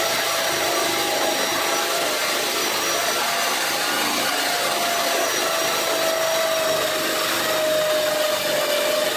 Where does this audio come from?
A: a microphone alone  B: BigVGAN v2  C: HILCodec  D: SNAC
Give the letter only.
A